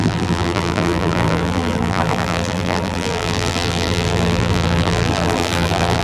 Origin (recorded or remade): remade